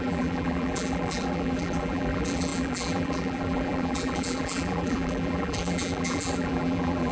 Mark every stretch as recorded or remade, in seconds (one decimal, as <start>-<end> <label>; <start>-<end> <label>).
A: 0.0-7.1 remade